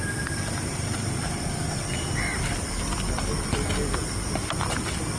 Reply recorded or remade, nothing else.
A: recorded